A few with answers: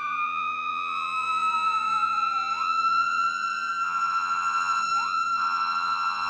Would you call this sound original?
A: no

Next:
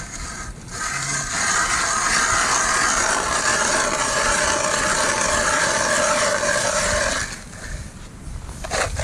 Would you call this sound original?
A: yes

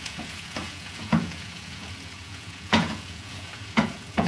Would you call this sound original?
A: no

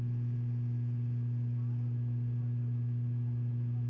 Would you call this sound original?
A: yes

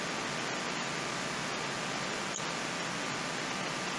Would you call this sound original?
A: yes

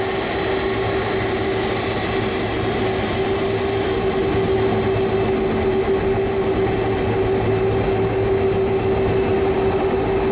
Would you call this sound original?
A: yes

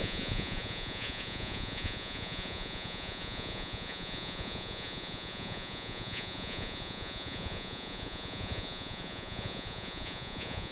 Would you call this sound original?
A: no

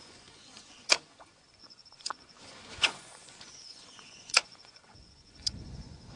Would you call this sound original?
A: no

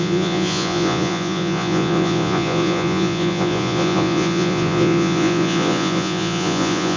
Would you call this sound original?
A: no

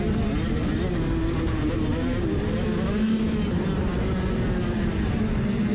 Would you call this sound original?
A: yes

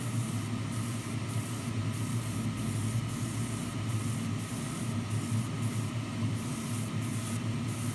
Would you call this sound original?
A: yes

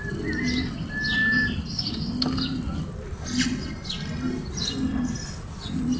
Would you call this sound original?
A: yes